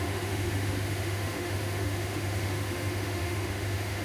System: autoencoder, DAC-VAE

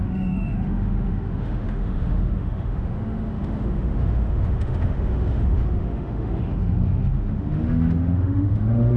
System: autoencoder, DAC-VAE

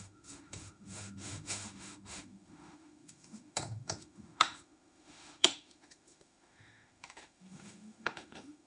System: autoencoder, DAC-VAE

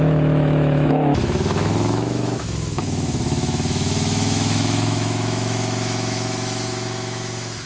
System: autoencoder, DAC-VAE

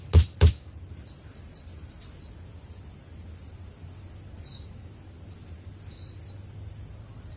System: none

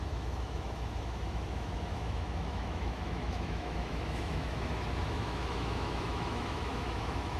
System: autoencoder, DAC-VAE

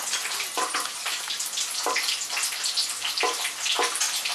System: none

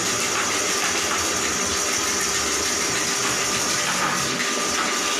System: none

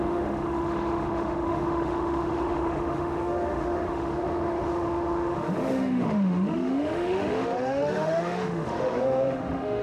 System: autoencoder, DAC-VAE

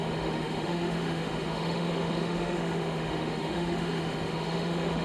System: autoencoder, DAC-VAE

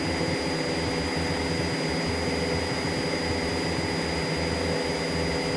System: none